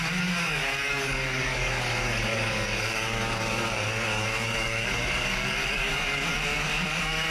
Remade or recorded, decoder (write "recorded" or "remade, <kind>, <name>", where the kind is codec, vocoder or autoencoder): remade, codec, DAC